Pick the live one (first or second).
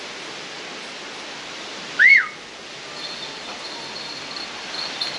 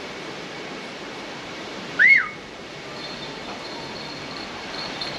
first